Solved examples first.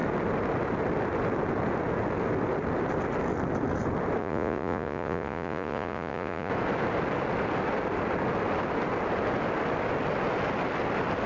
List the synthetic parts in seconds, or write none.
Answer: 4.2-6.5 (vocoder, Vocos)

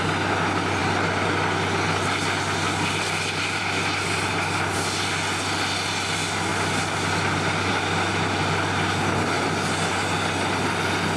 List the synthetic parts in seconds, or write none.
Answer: none

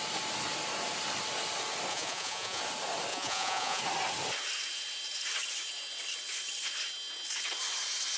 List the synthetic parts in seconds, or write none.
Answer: 1.9-2.6 (vocoder, Vocos); 3.1-3.8

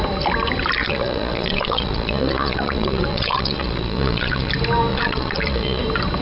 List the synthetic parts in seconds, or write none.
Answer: 0.8-4.5 (vocoder, Vocos); 4.9-5.8

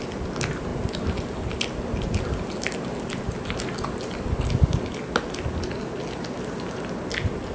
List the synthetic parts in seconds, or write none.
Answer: none

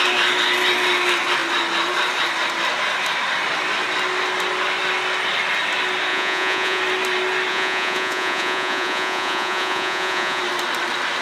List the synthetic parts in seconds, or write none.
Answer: 6.1-6.8 (vocoder, Vocos); 7.5-10.4

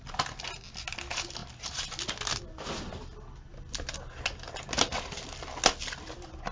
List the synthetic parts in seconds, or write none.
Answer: none

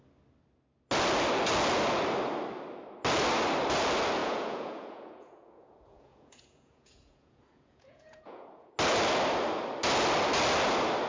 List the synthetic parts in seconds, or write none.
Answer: 4.2-8.7 (vocoder, Vocos)